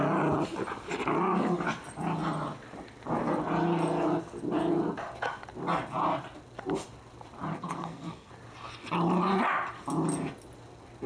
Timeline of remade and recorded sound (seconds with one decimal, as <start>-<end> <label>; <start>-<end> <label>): 0.0-7.5 recorded; 7.5-8.3 remade; 8.3-11.1 recorded